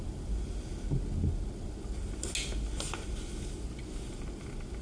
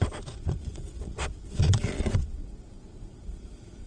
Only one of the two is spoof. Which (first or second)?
second